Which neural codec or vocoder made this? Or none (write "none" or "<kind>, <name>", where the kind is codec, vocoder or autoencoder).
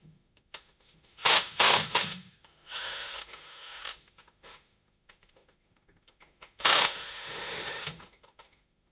autoencoder, DAC-VAE